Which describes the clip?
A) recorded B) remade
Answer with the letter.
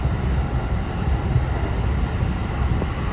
A